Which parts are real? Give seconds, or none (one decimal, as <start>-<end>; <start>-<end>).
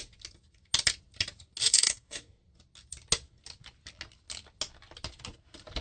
0.0-1.6; 2.3-5.8